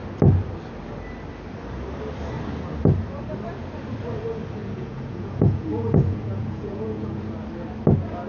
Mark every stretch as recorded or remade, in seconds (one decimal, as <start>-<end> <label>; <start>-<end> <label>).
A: 0.0-4.6 recorded; 4.6-7.2 remade; 7.2-8.3 recorded